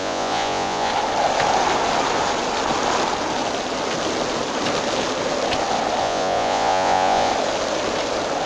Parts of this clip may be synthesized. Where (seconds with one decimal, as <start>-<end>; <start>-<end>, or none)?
0.0-0.9; 6.0-7.3